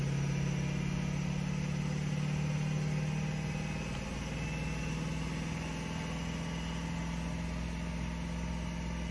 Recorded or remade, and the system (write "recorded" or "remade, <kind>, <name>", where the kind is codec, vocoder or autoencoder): recorded